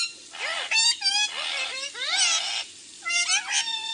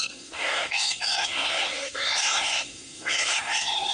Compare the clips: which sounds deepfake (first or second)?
second